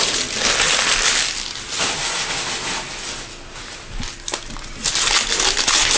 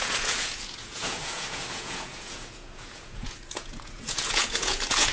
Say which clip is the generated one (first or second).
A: second